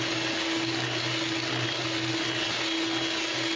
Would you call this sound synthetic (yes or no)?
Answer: no